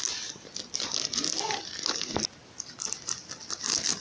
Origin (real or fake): real